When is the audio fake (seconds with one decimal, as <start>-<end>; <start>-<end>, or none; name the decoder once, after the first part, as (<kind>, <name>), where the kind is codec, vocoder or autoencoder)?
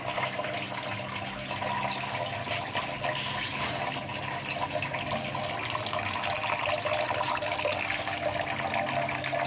none